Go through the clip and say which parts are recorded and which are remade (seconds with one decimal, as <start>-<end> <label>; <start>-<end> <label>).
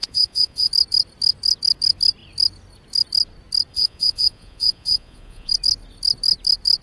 0.0-0.7 remade; 0.7-3.7 recorded; 3.7-5.5 remade; 5.5-6.8 recorded